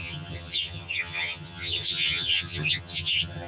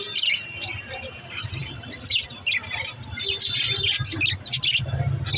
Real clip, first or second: second